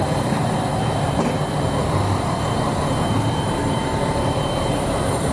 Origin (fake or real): fake